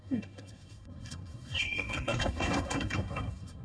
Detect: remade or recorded remade